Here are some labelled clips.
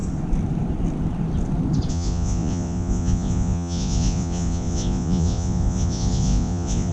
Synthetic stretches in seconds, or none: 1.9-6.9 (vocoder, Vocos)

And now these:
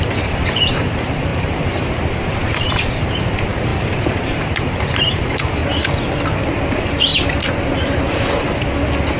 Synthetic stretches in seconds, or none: 0.0-5.6 (vocoder, BigVGAN v2); 6.6-7.1

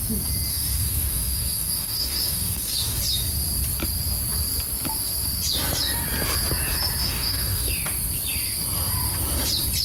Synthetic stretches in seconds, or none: 0.5-3.0 (codec, DAC); 7.0-7.7

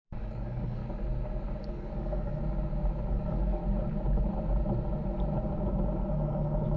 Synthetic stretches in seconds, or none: 0.0-0.8 (codec, DAC); 1.6-2.4; 3.1-3.6; 6.1-6.8

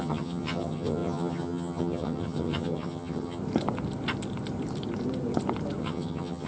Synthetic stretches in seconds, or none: 0.0-3.4 (vocoder, HiFi-GAN); 5.8-6.5

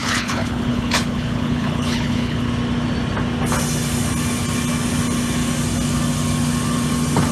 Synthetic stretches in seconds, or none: 0.0-2.5 (codec, HILCodec)

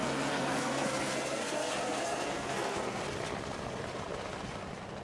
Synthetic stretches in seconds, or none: 0.0-3.0 (codec, SNAC)